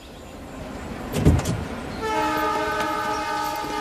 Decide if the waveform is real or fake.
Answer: real